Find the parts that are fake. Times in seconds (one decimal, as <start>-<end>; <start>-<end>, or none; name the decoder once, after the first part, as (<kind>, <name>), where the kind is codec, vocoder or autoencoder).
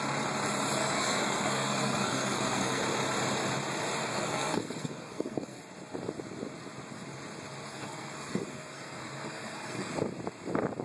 0.8-2.8 (codec, SNAC); 4.0-5.6; 7.7-9.9